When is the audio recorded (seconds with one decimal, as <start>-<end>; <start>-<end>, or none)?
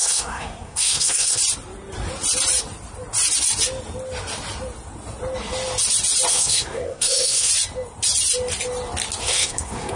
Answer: 1.4-6.3; 7.5-9.2